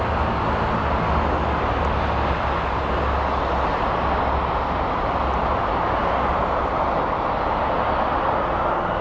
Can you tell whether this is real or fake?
real